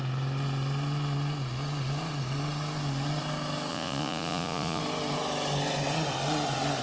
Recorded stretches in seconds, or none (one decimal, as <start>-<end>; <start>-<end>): 0.0-3.7; 4.8-6.8